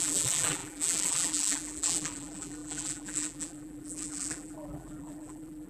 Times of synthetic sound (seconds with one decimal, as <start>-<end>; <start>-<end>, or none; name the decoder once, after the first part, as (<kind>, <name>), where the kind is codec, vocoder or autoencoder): 0.0-5.7 (vocoder, BigVGAN v2)